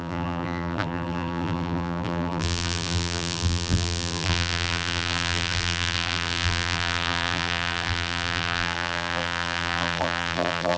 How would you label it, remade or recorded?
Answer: remade